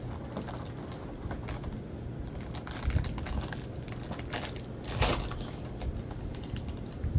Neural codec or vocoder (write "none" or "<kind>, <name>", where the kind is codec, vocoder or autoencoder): none